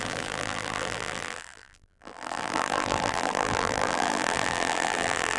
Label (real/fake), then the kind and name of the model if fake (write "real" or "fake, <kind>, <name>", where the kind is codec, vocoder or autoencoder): fake, vocoder, BigVGAN v2